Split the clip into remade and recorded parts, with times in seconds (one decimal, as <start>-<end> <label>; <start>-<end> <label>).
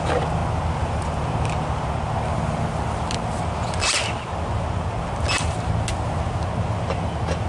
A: 0.0-7.5 recorded